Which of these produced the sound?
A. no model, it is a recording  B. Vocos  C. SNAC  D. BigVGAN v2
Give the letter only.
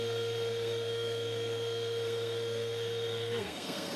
C